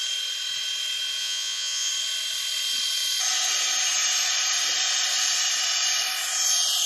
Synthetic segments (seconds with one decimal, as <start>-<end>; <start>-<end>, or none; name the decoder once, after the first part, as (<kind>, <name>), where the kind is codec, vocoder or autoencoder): 1.2-1.9 (vocoder, Vocos)